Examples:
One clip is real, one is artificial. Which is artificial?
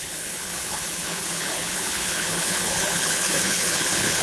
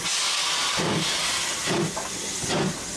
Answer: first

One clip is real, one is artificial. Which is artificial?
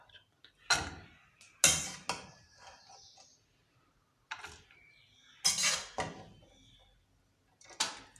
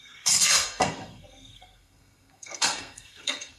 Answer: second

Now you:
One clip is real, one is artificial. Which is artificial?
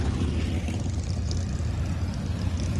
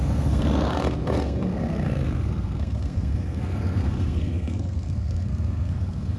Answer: second